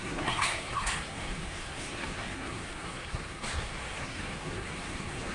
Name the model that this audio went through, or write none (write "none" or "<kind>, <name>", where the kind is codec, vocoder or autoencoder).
codec, SNAC